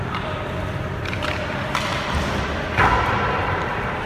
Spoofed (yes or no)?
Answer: yes